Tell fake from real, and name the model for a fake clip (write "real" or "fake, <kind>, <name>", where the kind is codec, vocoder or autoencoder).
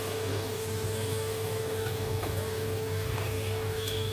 fake, codec, DAC